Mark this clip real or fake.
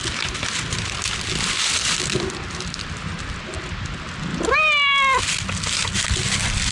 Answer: real